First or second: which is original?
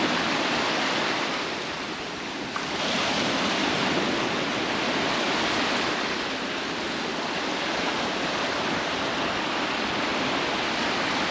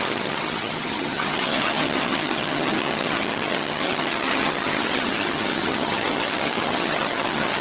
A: first